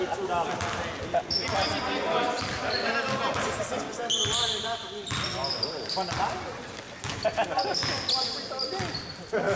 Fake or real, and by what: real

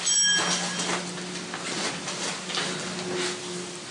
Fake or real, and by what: real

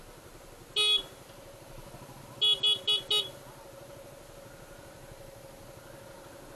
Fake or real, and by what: real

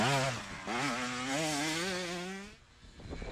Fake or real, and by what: real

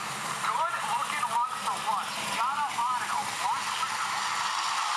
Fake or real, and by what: real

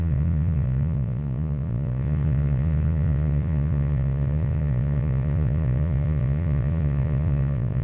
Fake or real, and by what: fake, vocoder, Vocos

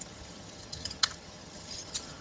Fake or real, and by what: fake, vocoder, HiFi-GAN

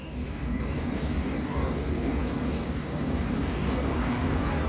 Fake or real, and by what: fake, codec, DAC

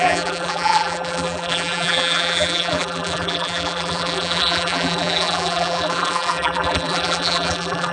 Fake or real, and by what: fake, vocoder, BigVGAN v2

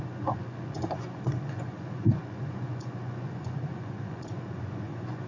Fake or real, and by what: fake, vocoder, Vocos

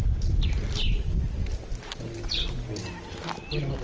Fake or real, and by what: real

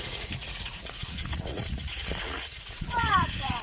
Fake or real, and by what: fake, vocoder, Vocos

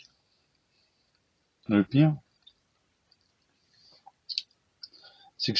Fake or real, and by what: real